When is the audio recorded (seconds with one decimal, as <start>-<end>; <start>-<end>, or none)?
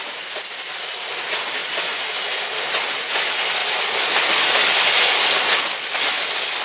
0.0-6.6